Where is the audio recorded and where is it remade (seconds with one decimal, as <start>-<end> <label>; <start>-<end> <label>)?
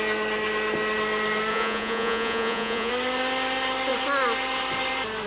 0.0-1.5 recorded; 1.5-2.9 remade; 2.9-5.3 recorded